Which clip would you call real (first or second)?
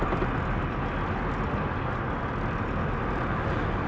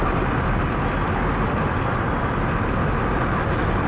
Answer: first